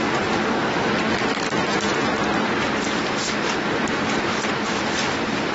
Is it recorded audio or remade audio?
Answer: recorded